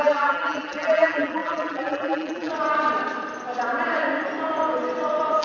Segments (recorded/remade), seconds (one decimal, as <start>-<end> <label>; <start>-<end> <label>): 0.0-2.5 remade; 2.5-5.4 recorded